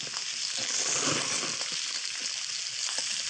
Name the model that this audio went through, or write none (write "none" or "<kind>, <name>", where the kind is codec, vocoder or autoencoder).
none